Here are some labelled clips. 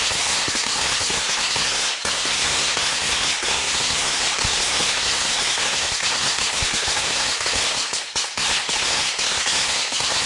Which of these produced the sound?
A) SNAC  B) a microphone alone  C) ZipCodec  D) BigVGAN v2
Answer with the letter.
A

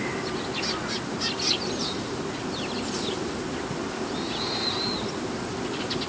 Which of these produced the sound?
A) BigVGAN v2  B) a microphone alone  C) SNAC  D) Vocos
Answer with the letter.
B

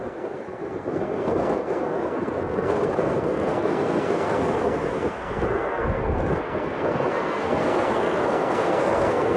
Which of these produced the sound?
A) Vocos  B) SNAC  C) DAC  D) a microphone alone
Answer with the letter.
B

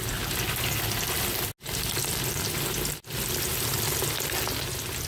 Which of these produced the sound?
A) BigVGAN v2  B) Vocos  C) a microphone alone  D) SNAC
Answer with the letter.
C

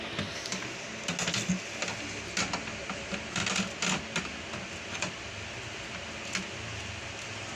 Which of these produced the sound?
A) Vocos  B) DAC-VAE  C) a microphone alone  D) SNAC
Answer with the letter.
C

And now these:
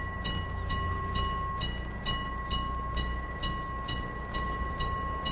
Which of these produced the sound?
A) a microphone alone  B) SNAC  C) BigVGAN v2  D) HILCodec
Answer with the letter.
A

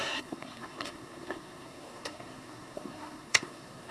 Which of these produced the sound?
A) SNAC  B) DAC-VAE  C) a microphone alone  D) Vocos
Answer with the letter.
A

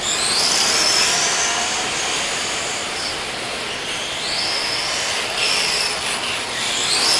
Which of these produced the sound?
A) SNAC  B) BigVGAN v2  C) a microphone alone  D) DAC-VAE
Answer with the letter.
C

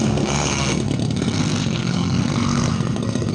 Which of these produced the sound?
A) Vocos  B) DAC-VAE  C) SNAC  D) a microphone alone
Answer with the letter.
C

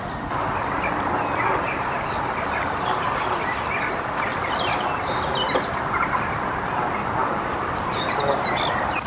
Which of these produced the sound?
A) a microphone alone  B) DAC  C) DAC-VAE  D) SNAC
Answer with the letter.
A